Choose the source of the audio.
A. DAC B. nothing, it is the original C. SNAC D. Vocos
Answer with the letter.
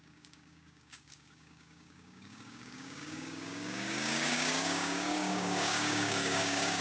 A